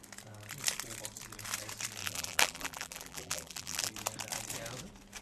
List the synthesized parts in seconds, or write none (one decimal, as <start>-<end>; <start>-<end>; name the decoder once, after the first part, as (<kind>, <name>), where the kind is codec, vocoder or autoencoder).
2.0-3.9 (vocoder, BigVGAN v2)